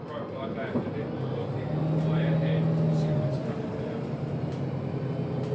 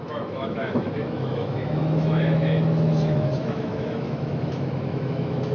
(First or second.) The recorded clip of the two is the first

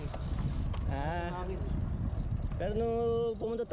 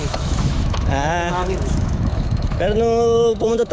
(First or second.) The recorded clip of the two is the first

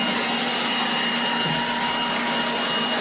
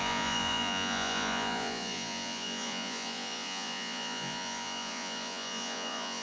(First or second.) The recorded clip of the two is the first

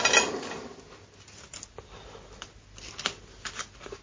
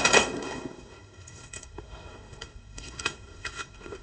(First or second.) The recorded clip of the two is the first